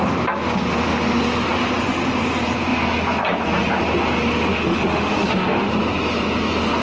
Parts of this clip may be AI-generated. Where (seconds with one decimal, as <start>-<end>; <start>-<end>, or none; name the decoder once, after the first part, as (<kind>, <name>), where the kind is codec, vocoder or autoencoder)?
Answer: 4.5-5.7 (autoencoder, DAC-VAE)